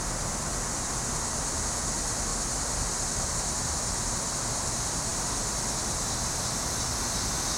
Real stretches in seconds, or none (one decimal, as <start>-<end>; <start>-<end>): 0.0-7.6